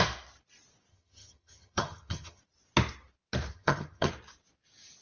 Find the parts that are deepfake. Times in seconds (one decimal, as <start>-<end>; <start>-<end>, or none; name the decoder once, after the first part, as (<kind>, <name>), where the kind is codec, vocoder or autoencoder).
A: 0.9-2.4 (vocoder, HiFi-GAN); 3.5-4.1